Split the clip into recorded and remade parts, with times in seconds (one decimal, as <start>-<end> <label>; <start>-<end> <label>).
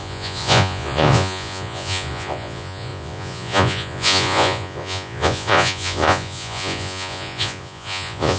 0.0-8.4 remade